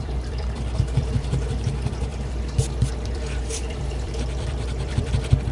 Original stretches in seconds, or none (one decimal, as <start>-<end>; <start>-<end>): none